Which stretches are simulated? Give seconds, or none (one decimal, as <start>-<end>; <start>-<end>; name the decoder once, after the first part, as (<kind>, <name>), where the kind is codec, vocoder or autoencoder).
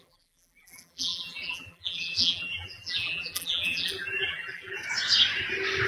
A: 0.0-4.8 (vocoder, BigVGAN v2)